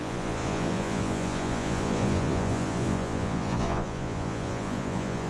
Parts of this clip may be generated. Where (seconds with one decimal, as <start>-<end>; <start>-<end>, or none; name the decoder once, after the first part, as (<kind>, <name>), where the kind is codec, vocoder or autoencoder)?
0.0-5.3 (vocoder, Vocos)